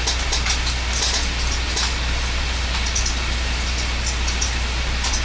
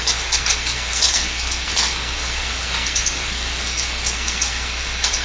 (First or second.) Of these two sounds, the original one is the first